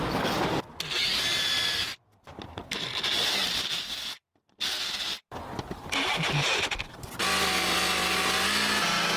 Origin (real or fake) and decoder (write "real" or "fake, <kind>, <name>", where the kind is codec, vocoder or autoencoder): real